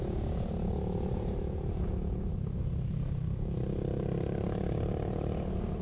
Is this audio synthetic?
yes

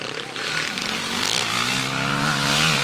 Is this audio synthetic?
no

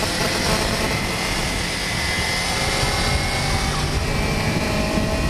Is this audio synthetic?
no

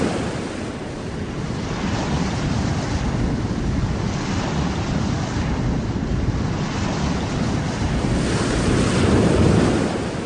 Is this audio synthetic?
no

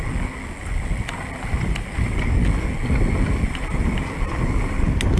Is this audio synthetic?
no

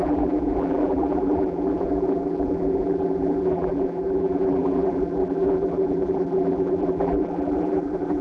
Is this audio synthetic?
yes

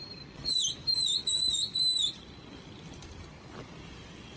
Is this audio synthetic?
no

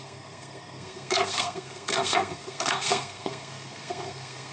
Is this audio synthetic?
yes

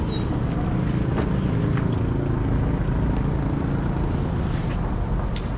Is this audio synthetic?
no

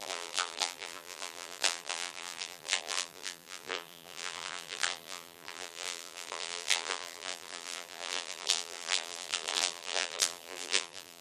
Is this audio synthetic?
yes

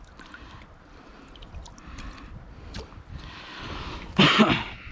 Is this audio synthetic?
no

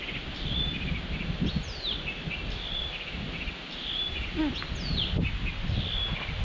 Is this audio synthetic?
no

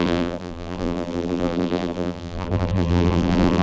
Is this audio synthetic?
yes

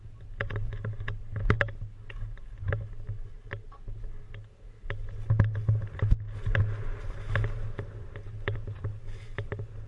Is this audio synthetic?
no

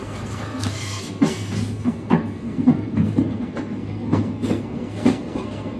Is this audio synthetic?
yes